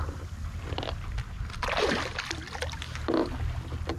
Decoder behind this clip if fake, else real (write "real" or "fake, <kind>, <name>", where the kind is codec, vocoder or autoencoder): real